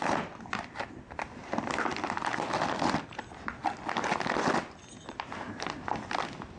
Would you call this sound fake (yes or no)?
no